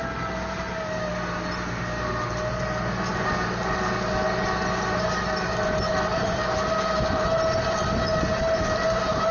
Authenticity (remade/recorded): recorded